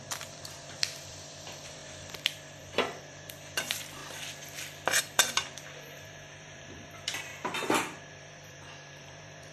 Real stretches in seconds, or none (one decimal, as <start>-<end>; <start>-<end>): 4.0-5.0; 7.3-8.1